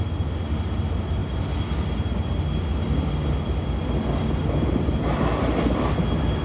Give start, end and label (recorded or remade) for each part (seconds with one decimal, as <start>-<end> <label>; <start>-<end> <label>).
0.0-6.4 recorded